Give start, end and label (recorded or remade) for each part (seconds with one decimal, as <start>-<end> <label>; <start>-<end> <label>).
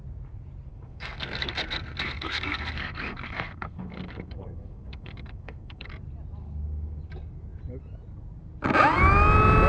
0.0-0.7 recorded; 0.7-5.9 remade; 5.9-6.4 recorded; 6.4-7.0 remade; 7.0-9.7 recorded